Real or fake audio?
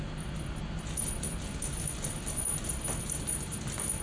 real